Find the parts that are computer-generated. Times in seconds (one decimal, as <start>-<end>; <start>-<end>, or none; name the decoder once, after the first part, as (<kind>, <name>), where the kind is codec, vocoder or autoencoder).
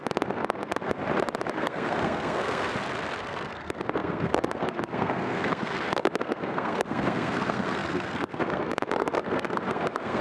0.0-1.0 (codec, SNAC); 1.5-2.7; 3.2-10.2